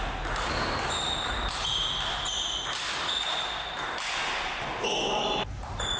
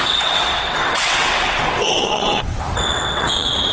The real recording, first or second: first